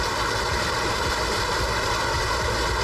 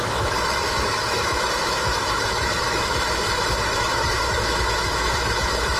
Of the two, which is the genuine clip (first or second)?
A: first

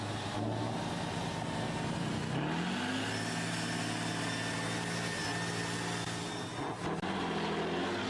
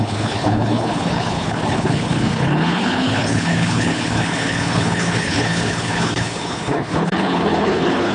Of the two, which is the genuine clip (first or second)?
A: first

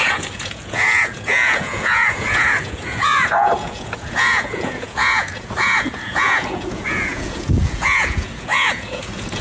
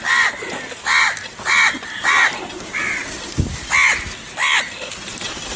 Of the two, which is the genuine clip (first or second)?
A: second